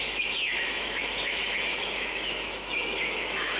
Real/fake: fake